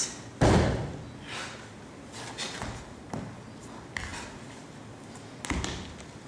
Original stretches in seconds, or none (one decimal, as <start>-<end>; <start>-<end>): 0.0-6.3